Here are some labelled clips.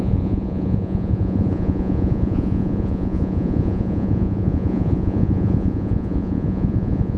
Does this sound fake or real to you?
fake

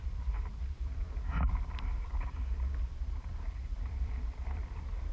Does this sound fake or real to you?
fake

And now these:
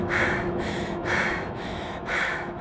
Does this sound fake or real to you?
fake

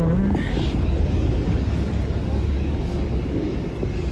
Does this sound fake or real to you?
fake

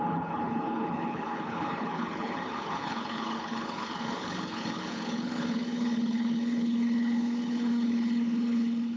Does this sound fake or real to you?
fake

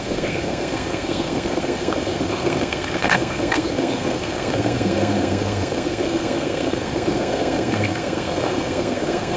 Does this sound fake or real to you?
fake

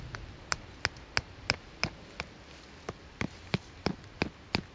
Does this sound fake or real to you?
real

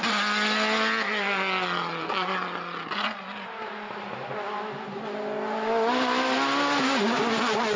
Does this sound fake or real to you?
real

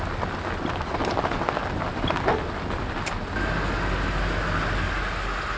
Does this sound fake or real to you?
real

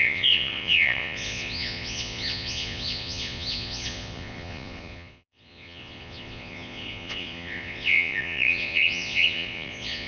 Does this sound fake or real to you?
fake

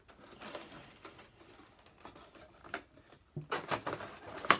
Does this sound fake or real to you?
real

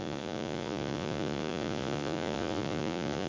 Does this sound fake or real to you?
fake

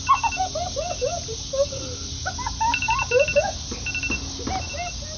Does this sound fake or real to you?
real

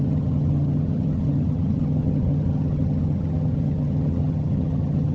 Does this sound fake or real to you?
fake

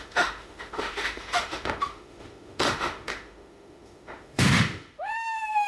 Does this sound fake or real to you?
fake